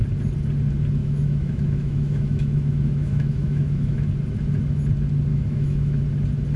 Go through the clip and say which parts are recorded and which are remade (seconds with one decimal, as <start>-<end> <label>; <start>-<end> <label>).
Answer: 0.0-1.0 recorded; 1.0-4.1 remade; 4.1-5.3 recorded; 5.3-6.0 remade; 6.0-6.6 recorded

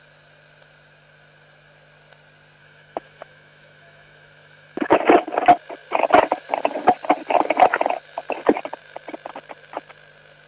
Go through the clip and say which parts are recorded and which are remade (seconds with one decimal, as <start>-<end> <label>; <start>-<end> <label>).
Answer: 0.0-2.6 recorded; 2.6-5.0 remade; 5.0-10.5 recorded